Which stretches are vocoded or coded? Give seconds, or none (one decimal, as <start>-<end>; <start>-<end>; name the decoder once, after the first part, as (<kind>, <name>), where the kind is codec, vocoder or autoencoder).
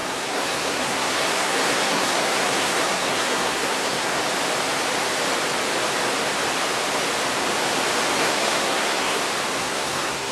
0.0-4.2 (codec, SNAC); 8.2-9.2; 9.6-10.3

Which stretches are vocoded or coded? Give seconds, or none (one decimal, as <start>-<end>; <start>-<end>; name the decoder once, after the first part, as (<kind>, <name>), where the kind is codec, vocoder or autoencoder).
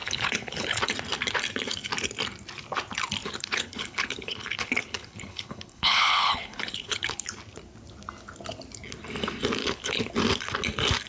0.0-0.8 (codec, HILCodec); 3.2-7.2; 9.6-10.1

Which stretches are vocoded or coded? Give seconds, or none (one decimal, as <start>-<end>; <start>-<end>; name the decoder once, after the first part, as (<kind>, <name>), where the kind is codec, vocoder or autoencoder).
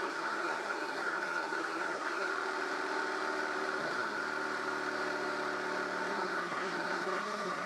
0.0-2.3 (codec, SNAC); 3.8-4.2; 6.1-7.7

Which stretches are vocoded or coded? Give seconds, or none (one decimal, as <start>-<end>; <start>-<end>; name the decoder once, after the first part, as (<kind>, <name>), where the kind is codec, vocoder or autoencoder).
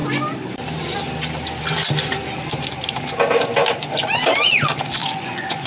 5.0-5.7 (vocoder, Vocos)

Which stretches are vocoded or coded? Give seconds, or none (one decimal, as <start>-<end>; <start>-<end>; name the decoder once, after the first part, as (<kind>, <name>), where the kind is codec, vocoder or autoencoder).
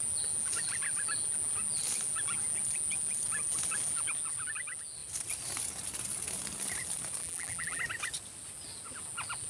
7.2-7.8 (vocoder, BigVGAN v2)